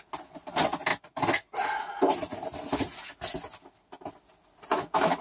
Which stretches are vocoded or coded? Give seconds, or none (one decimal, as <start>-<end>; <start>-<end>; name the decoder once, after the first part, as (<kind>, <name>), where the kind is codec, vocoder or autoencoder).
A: none

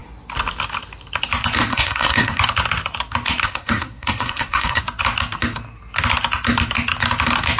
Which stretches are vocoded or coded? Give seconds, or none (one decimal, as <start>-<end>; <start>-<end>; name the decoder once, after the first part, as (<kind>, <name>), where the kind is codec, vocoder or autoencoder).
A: 1.7-2.4 (codec, SNAC); 3.4-4.8

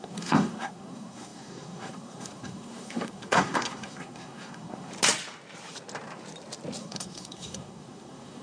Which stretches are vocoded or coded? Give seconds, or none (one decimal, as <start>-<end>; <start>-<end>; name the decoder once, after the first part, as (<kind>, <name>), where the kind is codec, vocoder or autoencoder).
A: 0.0-4.9 (codec, SNAC); 6.8-8.4

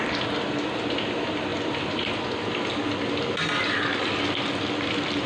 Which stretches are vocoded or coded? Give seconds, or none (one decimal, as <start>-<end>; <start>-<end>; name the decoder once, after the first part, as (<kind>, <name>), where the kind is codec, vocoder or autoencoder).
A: none

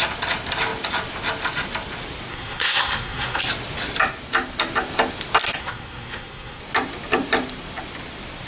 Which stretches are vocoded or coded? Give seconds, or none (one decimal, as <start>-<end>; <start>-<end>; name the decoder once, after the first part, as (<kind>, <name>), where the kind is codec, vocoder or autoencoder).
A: 2.3-3.4 (codec, SNAC); 5.6-6.6